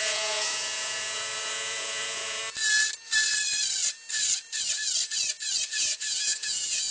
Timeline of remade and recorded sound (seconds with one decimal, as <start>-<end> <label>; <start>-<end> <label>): 0.0-2.4 remade; 2.4-5.7 recorded; 5.7-6.9 remade